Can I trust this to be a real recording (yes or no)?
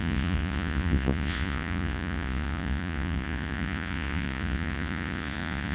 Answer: no